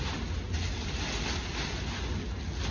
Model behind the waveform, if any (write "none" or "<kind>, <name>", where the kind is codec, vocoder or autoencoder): none